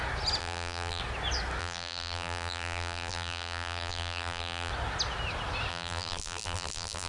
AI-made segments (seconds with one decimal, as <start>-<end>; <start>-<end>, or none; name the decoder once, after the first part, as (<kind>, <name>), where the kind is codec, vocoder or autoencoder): 0.4-1.0 (vocoder, BigVGAN v2); 1.6-4.7; 5.7-7.1